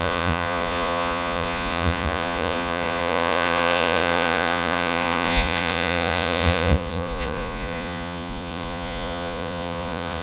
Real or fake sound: fake